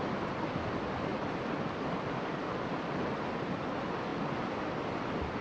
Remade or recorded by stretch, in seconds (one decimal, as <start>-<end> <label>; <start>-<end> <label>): 0.0-5.4 recorded

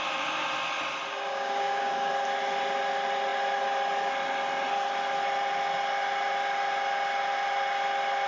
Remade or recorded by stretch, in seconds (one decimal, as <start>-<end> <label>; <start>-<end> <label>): 0.0-1.1 recorded; 1.1-2.1 remade; 2.1-8.3 recorded

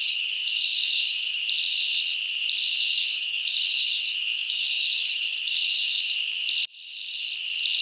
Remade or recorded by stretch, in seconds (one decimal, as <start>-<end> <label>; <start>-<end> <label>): 0.0-1.4 remade; 1.4-2.8 recorded; 2.8-6.0 remade; 6.0-7.8 recorded

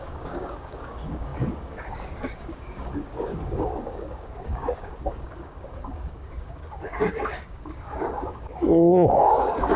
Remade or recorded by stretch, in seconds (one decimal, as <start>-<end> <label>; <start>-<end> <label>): 0.0-9.8 remade